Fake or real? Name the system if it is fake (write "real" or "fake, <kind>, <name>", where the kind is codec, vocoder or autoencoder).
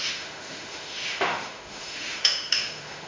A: fake, autoencoder, DAC-VAE